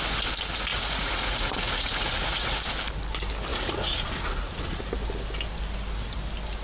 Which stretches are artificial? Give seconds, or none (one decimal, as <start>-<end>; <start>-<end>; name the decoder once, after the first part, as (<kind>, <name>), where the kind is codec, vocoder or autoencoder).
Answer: 0.7-2.6 (vocoder, Vocos); 3.5-4.8